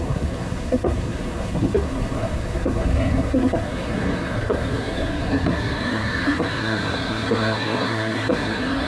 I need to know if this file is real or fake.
fake